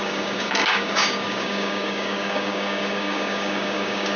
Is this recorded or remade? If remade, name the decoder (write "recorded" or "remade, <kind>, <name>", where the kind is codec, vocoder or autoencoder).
remade, codec, DAC